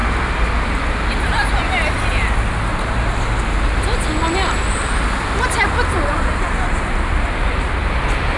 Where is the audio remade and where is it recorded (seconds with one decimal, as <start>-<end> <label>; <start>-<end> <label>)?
0.0-8.4 recorded